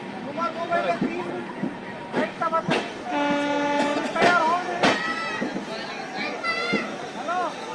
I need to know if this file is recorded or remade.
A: recorded